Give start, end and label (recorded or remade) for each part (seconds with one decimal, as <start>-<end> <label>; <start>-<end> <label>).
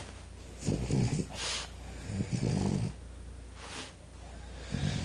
0.0-1.1 remade; 1.1-2.7 recorded; 2.7-5.0 remade